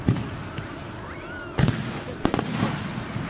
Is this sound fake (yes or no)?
no